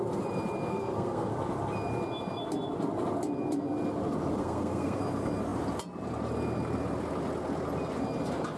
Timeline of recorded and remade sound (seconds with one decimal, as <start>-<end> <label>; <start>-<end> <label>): 0.0-0.7 recorded; 0.7-1.3 remade; 1.3-4.4 recorded; 4.4-5.0 remade; 5.0-8.6 recorded